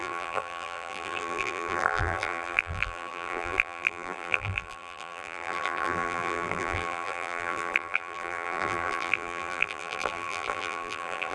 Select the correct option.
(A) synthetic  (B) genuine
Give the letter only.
A